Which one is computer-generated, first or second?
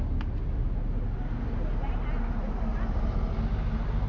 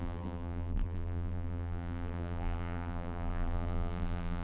second